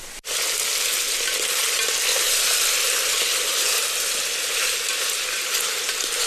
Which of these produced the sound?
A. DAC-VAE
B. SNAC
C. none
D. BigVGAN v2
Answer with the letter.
C